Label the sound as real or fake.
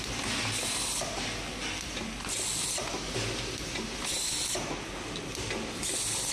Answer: real